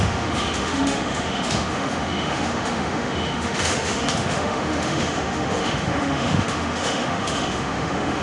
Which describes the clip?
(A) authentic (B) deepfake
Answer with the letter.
B